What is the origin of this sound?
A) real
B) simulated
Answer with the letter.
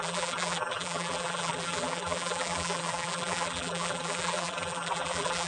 B